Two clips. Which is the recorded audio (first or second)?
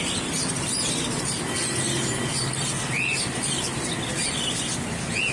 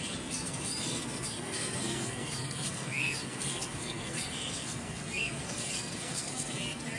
first